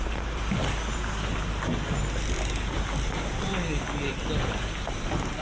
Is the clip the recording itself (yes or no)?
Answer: yes